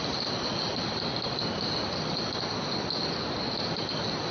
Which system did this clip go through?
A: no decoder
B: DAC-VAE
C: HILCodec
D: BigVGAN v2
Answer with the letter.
A